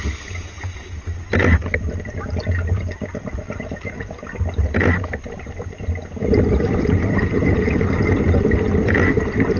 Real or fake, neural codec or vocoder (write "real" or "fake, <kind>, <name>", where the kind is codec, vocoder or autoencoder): real